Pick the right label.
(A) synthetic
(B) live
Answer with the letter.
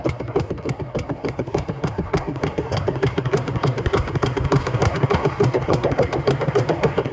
A